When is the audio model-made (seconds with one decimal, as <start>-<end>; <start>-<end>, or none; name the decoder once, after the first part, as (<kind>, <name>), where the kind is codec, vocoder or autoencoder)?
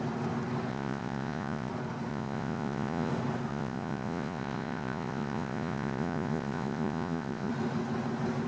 0.7-1.7 (vocoder, Vocos); 2.1-3.1; 3.5-7.5